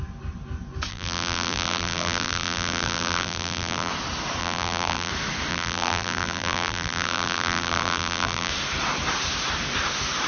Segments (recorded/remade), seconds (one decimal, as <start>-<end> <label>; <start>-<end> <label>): 0.0-0.9 recorded; 0.9-3.9 remade; 3.9-4.4 recorded; 4.4-5.1 remade; 5.1-5.5 recorded; 5.5-8.5 remade; 8.5-10.3 recorded